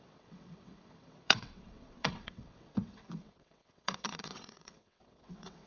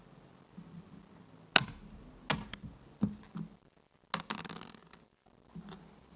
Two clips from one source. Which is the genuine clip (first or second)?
second